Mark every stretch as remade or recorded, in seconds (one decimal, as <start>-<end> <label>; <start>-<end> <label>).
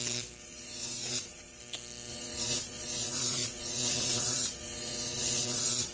0.0-0.4 recorded; 0.4-1.6 remade; 1.6-2.1 recorded; 2.1-5.9 remade